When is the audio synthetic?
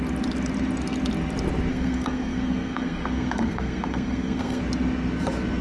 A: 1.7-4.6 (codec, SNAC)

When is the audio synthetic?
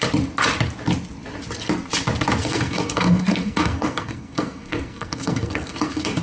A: 2.4-6.2 (codec, SNAC)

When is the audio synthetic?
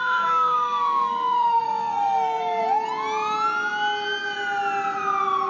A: 0.0-2.6 (codec, SNAC)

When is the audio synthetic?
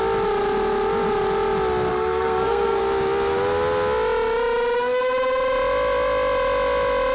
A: 1.9-2.8 (codec, SNAC)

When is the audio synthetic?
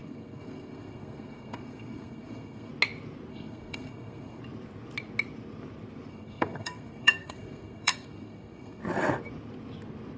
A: 0.0-2.7 (codec, SNAC); 3.3-4.4; 6.1-8.8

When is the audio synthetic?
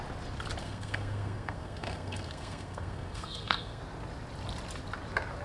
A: 0.6-3.8 (codec, SNAC)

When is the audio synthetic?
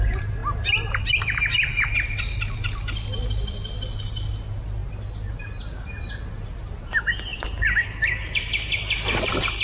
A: none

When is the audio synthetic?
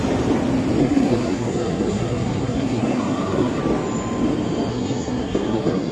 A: 0.8-3.6 (codec, SNAC); 4.7-5.9